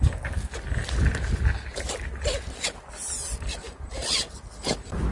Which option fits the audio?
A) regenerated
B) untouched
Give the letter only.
B